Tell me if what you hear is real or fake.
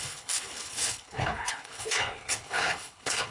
fake